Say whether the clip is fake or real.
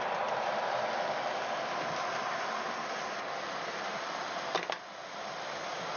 real